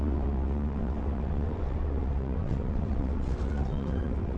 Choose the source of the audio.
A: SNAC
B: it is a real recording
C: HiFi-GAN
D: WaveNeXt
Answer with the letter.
D